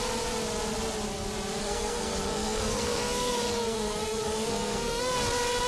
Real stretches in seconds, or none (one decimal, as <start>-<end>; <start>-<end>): 0.0-1.6; 5.0-5.7